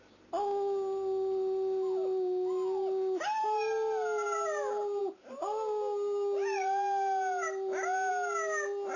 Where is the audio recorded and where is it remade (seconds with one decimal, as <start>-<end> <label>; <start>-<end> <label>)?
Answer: 0.0-9.0 recorded